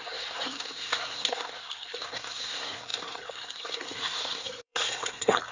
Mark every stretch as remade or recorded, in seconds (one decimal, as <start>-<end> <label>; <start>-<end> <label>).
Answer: 0.0-5.5 remade